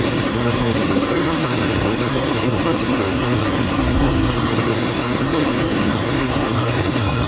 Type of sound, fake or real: fake